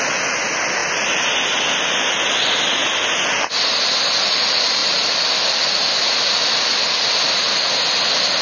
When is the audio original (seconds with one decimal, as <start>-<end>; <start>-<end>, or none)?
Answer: 0.0-8.4